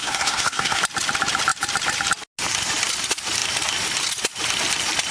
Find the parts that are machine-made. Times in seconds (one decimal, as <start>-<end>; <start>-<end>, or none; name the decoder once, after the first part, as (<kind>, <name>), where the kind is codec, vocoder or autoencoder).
0.0-0.8 (codec, SNAC)